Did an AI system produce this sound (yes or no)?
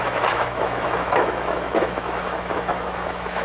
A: yes